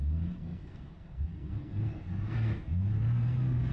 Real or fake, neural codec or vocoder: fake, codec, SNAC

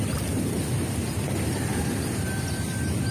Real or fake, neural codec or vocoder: real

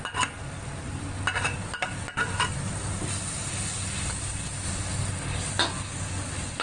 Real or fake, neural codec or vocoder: real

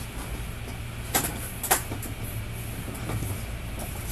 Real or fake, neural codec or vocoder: real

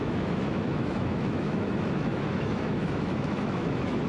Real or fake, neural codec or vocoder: fake, autoencoder, DAC-VAE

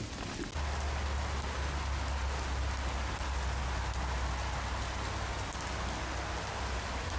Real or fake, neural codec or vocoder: real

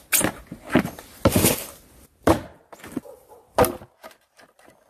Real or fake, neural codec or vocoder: real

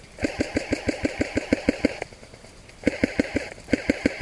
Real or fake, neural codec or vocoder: real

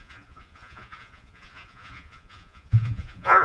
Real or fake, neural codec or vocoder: fake, vocoder, Vocos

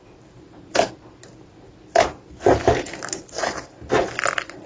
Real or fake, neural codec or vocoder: real